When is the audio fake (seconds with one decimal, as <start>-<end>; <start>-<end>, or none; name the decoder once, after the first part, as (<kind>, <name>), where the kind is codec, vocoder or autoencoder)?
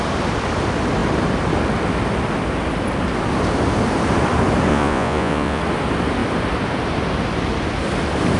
4.7-5.6 (vocoder, Vocos)